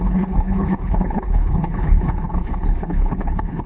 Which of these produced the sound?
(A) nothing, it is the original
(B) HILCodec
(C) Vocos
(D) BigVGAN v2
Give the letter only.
B